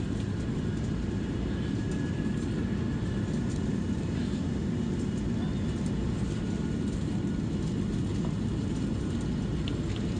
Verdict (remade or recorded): recorded